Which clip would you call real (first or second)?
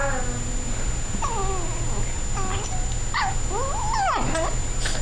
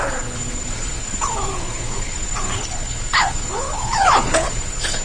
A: first